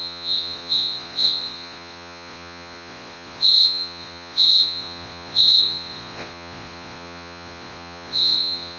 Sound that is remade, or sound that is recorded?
remade